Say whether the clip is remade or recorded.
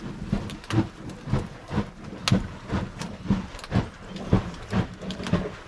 recorded